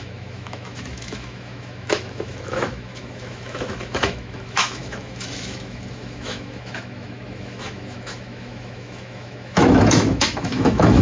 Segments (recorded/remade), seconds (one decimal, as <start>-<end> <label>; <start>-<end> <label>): 0.0-11.0 remade